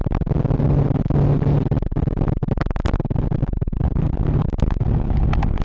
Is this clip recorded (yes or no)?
yes